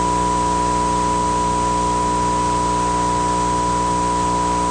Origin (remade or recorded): recorded